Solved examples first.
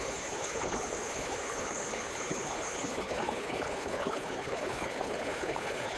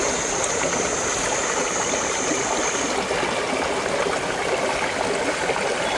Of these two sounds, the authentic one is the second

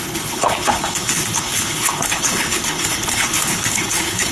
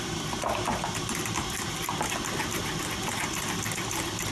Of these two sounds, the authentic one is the second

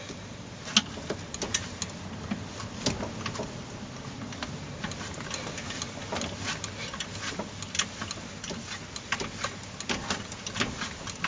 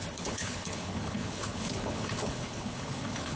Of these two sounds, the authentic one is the first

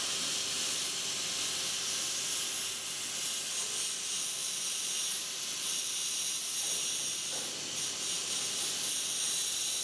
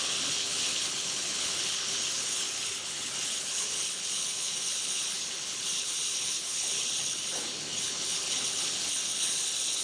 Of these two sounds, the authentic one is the first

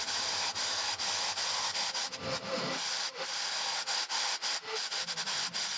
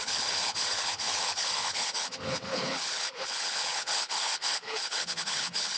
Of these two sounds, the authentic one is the first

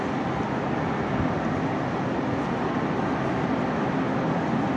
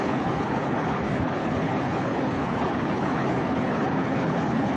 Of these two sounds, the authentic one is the first